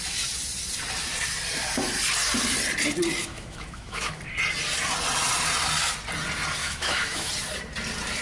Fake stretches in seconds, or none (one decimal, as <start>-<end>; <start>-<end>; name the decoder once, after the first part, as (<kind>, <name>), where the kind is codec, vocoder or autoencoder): 3.2-4.2 (autoencoder, DAC-VAE); 6.6-7.3